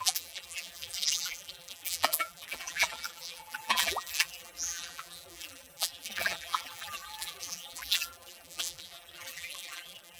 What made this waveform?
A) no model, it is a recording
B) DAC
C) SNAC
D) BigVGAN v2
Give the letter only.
D